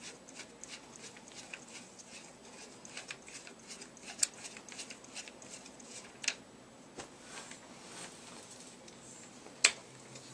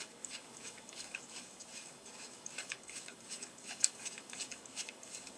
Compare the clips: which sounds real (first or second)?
first